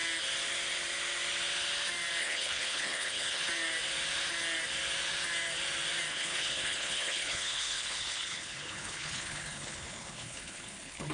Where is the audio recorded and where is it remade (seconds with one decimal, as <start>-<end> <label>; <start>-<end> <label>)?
0.0-2.2 recorded; 2.2-3.4 remade; 3.4-6.1 recorded; 6.1-11.1 remade